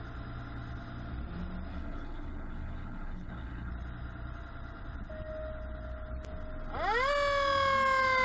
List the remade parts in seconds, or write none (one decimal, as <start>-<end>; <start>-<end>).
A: 1.7-3.7